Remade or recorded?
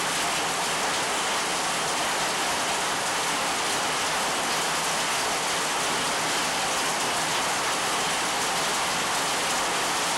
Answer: recorded